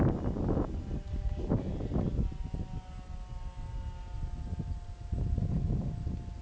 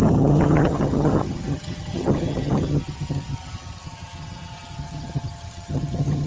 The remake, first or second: second